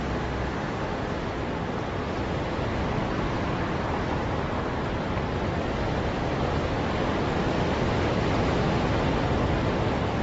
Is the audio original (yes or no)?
yes